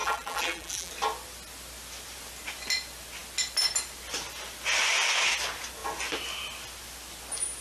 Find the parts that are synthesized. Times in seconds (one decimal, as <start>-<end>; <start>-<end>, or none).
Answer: 0.0-0.9